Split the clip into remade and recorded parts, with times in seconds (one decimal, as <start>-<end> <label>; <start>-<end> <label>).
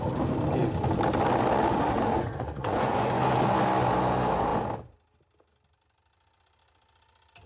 0.0-1.7 recorded; 1.7-3.2 remade; 3.2-7.5 recorded